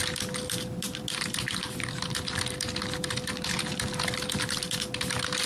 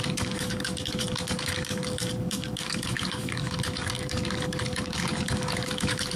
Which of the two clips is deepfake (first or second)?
second